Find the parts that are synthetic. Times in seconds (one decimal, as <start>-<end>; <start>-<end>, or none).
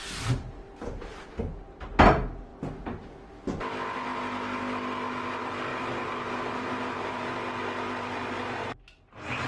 5.7-7.3